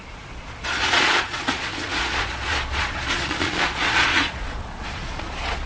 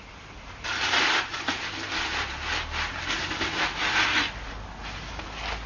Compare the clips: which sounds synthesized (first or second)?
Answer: first